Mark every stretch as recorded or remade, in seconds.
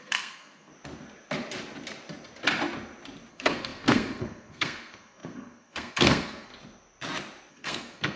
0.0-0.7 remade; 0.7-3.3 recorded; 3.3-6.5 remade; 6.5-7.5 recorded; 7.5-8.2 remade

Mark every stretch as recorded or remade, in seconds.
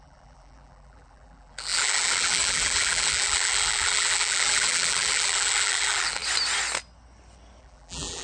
0.0-6.2 remade; 6.2-7.6 recorded; 7.6-8.2 remade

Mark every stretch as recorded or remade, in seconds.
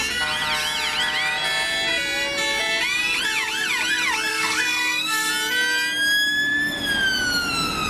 0.0-4.3 recorded; 4.3-5.3 remade; 5.3-7.9 recorded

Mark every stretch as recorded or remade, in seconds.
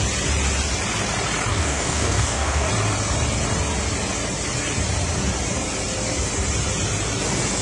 0.0-1.5 recorded; 1.5-2.7 remade; 2.7-7.6 recorded